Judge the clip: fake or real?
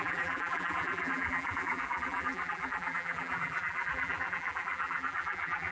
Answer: fake